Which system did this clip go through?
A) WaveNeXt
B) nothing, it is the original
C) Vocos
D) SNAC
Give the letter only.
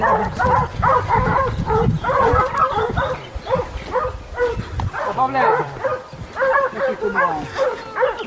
B